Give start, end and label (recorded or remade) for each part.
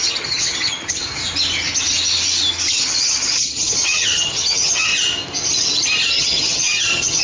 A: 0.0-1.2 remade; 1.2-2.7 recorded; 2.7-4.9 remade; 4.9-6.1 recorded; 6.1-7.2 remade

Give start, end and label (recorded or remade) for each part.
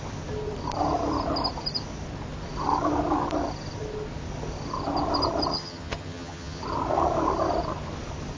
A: 0.0-5.5 recorded; 5.5-6.6 remade; 6.6-8.4 recorded